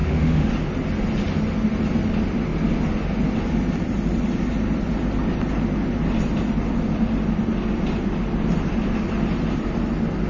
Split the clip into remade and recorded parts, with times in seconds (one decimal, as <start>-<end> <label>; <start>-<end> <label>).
0.0-0.5 remade; 0.5-10.3 recorded